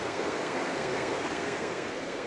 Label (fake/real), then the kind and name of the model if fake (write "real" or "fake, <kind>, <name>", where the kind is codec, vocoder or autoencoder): fake, codec, SNAC